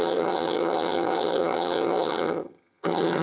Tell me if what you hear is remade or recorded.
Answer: remade